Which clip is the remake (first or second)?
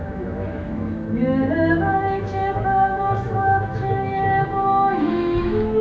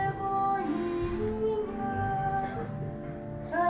first